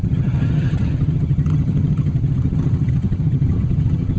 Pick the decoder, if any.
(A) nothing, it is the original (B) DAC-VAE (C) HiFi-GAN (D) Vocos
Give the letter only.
C